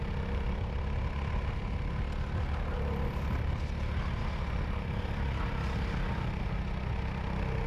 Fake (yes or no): no